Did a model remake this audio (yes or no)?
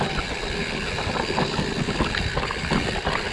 no